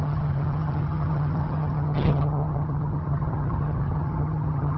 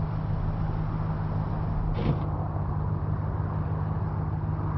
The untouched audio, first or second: second